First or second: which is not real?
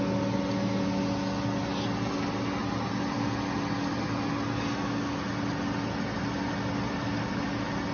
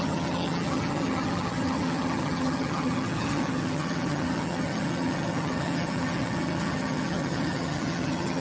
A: second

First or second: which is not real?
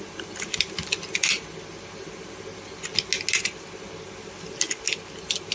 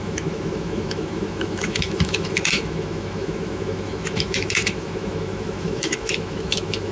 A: second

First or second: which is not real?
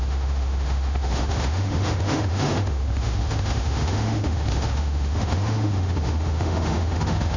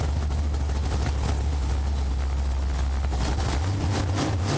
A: first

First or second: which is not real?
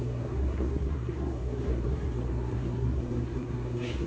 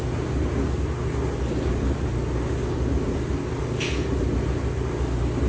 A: first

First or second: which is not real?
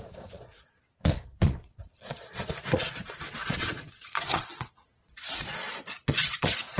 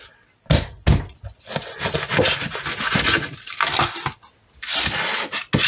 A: first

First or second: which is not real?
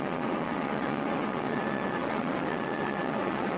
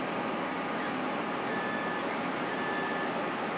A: first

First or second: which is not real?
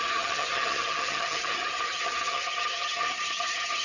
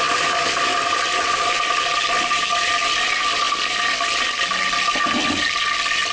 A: first